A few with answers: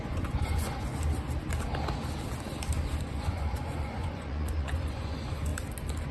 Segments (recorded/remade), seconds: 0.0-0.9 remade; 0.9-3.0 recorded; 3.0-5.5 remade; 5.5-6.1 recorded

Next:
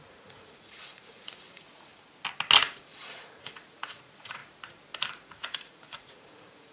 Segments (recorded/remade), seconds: 0.0-1.9 remade; 1.9-2.6 recorded; 2.6-4.4 remade; 4.4-5.1 recorded; 5.1-6.7 remade